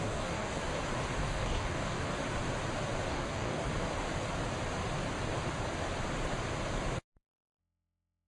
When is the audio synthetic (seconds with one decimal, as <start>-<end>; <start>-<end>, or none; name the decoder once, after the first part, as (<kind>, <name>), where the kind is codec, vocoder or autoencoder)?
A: 0.0-0.6 (codec, DAC); 1.2-2.1; 3.1-3.7; 7.6-8.3